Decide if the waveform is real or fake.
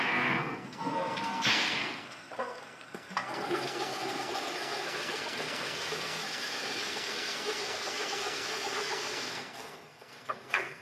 fake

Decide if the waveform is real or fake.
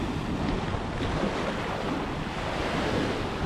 real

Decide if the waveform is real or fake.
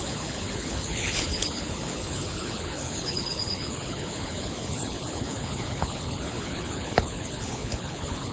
fake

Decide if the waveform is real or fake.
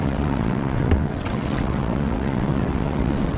fake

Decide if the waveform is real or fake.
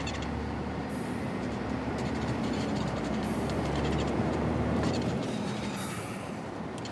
fake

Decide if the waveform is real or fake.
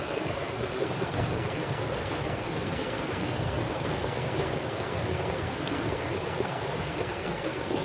fake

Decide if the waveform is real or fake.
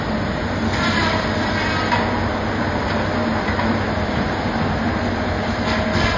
real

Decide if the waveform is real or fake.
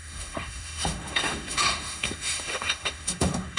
fake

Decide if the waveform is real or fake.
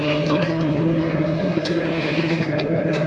fake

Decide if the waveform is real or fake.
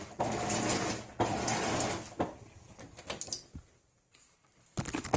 real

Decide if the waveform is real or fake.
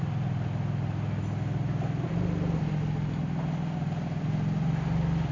real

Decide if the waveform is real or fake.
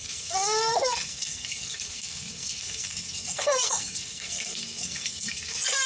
fake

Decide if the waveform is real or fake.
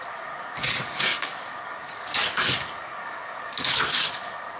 fake